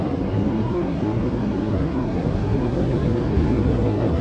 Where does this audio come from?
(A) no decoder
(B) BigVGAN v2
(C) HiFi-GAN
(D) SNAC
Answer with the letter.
D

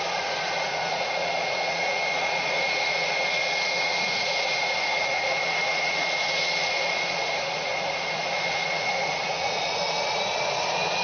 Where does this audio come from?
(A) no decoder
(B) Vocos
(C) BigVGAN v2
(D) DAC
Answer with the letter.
B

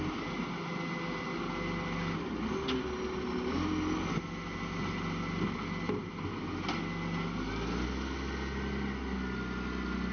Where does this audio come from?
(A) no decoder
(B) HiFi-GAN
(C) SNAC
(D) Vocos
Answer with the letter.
A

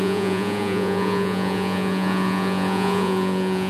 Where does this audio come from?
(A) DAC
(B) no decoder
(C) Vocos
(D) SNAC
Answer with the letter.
C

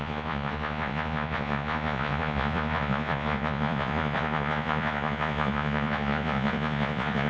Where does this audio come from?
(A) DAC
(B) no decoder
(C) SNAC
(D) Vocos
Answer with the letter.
D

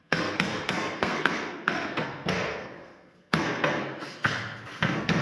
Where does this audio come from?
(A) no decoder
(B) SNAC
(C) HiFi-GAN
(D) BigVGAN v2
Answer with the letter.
B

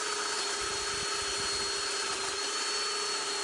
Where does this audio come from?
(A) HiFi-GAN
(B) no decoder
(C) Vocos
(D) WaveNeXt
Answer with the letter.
B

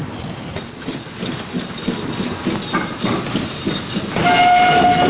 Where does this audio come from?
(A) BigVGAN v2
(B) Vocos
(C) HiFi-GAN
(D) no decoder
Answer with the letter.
D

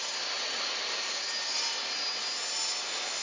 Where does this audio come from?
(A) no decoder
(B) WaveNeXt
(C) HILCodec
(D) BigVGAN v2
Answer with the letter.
A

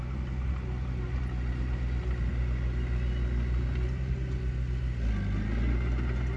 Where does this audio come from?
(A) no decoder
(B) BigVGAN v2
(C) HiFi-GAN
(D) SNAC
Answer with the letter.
A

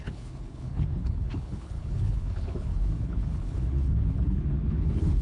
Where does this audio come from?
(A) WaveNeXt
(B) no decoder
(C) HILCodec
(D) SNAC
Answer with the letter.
C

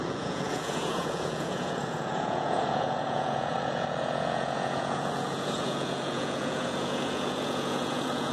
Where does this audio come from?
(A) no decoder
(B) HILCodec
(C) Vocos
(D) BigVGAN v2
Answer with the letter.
C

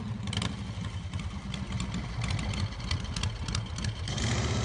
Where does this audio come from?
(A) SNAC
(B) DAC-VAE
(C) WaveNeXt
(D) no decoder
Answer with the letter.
D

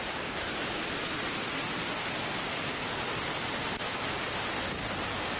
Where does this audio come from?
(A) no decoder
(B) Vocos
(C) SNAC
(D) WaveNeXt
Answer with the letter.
A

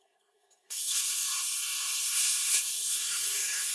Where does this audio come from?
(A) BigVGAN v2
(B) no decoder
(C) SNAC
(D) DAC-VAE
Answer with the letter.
C